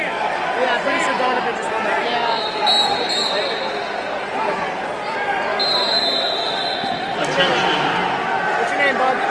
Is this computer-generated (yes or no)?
no